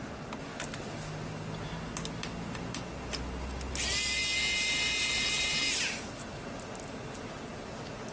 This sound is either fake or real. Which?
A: real